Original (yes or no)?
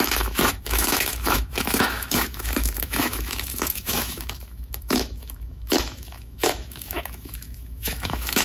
no